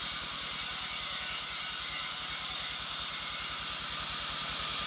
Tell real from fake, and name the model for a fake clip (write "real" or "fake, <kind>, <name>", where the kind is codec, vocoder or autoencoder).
real